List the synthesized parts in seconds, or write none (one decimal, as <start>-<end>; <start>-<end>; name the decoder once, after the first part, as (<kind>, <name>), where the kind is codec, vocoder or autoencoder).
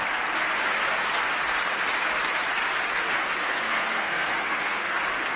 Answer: 3.4-5.0 (codec, SNAC)